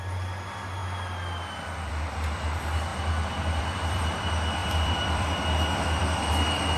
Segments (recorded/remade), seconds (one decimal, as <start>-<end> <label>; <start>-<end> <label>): 0.0-0.8 remade; 0.8-1.9 recorded; 1.9-6.8 remade